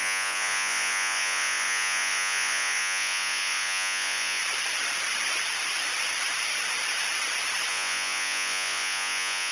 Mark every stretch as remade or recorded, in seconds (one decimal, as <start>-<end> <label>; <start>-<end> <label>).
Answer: 0.0-4.4 remade; 4.4-7.7 recorded; 7.7-9.5 remade